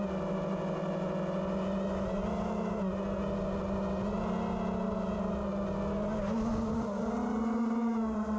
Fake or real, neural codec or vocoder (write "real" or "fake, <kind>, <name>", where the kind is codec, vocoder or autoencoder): real